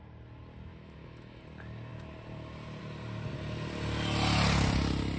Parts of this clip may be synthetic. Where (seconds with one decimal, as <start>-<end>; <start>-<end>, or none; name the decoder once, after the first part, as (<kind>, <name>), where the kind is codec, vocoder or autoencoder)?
0.7-1.4 (autoencoder, DAC-VAE)